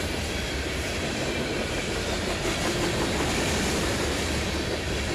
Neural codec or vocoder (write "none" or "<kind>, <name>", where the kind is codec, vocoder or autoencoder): vocoder, BigVGAN v2